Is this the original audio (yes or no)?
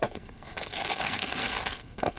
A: no